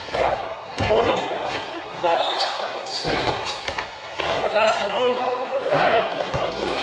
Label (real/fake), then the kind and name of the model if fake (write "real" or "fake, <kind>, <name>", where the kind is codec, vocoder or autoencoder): fake, codec, SNAC